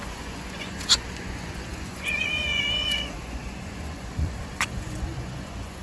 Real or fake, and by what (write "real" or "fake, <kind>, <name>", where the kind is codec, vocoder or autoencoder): fake, vocoder, Vocos